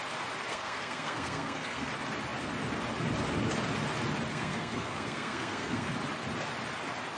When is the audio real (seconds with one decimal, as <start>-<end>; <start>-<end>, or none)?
0.0-0.5; 1.9-4.3; 5.9-7.2